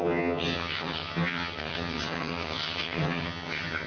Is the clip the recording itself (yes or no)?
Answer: no